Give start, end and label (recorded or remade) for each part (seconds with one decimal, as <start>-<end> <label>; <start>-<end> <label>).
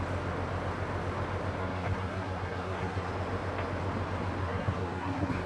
0.0-1.6 recorded; 1.6-3.1 remade; 3.1-4.4 recorded; 4.4-5.5 remade